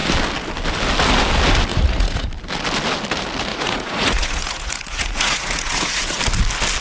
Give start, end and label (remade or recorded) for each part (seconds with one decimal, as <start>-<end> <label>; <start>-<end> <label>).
0.0-1.7 recorded; 1.7-2.3 remade; 2.3-3.5 recorded; 3.5-6.2 remade; 6.2-6.8 recorded